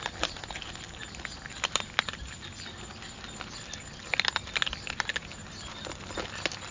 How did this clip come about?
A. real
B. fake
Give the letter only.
A